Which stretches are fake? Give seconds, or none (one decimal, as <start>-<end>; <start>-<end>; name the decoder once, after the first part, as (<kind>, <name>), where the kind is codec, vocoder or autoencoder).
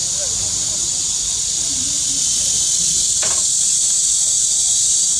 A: 0.7-1.1 (vocoder, BigVGAN v2); 3.6-5.2